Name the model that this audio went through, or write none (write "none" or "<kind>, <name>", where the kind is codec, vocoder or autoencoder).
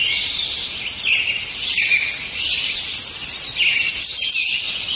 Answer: none